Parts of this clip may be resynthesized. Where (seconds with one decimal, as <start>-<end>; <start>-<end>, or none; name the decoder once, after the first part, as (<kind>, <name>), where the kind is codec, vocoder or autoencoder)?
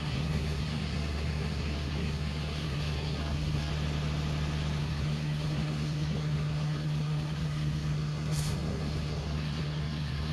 0.0-3.7 (codec, SNAC); 4.8-10.3